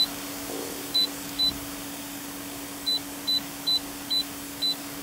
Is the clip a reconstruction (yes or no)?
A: yes